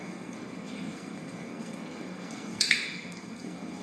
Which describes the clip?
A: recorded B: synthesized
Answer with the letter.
B